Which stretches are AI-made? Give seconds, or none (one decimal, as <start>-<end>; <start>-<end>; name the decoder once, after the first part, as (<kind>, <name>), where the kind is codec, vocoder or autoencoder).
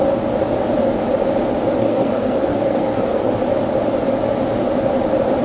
1.8-3.3 (codec, SNAC)